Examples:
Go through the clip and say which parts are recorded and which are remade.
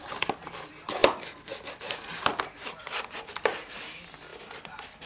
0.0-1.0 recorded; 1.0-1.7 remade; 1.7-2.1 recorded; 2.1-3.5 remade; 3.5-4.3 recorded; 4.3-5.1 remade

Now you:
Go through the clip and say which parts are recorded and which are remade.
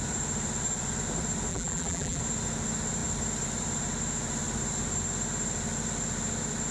0.0-1.5 recorded; 1.5-2.2 remade; 2.2-6.7 recorded